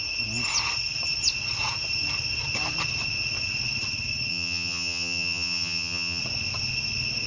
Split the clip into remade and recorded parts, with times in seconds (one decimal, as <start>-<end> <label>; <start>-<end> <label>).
0.0-4.3 recorded; 4.3-6.2 remade; 6.2-7.3 recorded